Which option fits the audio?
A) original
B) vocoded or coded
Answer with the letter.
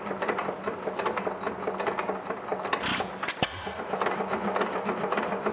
A